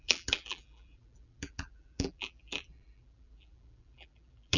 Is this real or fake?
fake